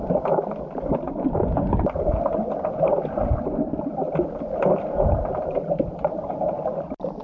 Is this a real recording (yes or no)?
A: yes